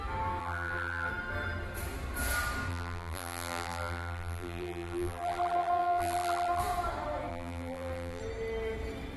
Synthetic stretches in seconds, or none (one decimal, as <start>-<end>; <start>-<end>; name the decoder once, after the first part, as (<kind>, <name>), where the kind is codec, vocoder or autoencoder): 0.4-1.1 (vocoder, BigVGAN v2); 2.7-6.6; 7.3-8.2